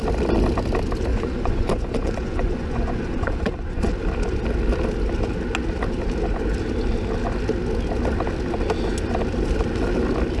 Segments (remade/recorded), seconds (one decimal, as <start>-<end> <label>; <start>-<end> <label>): 0.0-1.1 recorded; 1.1-3.9 remade; 3.9-10.4 recorded